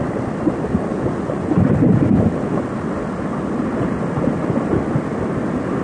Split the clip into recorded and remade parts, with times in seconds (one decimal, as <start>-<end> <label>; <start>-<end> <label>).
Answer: 0.0-0.9 recorded; 0.9-1.5 remade; 1.5-5.8 recorded